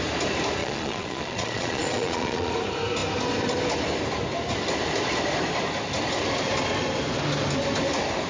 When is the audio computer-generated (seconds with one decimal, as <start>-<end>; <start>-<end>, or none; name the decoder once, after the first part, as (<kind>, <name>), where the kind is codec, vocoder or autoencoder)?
0.6-2.5 (vocoder, Vocos)

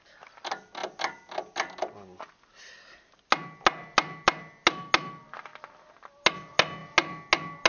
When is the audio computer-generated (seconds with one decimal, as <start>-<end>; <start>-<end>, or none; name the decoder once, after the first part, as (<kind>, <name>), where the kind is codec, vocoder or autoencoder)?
none

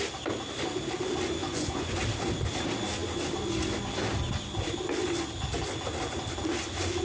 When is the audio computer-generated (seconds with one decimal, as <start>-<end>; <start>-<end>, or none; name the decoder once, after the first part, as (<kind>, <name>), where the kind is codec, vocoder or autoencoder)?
1.4-2.0 (vocoder, Vocos)

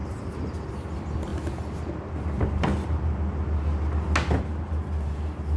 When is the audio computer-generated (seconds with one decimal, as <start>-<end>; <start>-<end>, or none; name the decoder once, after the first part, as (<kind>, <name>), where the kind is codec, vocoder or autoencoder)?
none